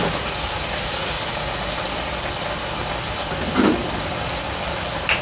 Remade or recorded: recorded